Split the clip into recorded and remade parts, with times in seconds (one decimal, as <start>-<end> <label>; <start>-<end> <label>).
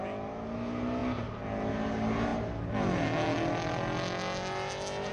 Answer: 0.0-5.1 recorded